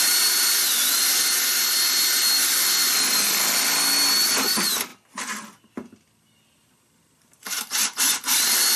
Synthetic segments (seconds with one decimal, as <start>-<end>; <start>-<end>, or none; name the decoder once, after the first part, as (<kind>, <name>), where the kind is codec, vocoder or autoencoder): none